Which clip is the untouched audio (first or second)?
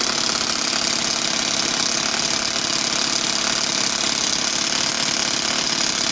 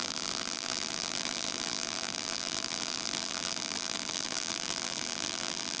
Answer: first